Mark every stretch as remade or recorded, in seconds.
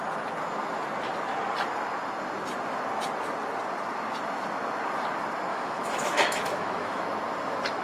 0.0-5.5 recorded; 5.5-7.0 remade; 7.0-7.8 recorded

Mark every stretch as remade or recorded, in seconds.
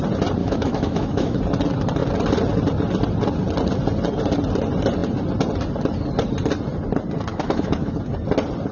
0.0-0.4 recorded; 0.4-1.4 remade; 1.4-7.3 recorded; 7.3-8.0 remade; 8.0-8.7 recorded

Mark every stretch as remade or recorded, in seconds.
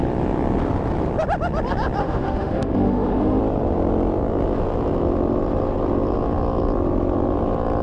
0.0-2.0 recorded; 2.0-3.4 remade; 3.4-7.8 recorded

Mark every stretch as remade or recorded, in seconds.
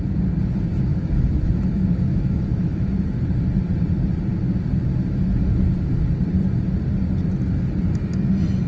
0.0-0.9 recorded; 0.9-3.2 remade; 3.2-8.7 recorded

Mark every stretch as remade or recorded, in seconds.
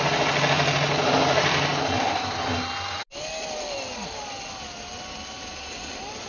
0.0-6.3 recorded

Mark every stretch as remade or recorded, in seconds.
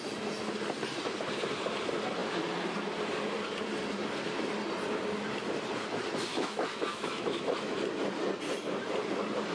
0.0-6.3 recorded; 6.3-7.8 remade; 7.8-9.5 recorded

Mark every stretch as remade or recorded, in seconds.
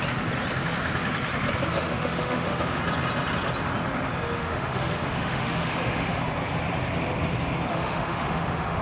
0.0-1.7 recorded; 1.7-2.8 remade; 2.8-4.4 recorded; 4.4-6.2 remade; 6.2-7.7 recorded; 7.7-8.8 remade